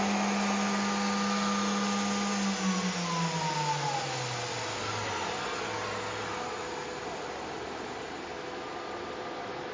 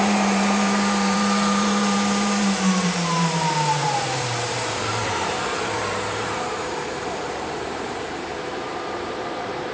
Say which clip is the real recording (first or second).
first